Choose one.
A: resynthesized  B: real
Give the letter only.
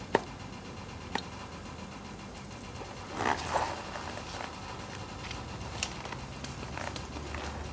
B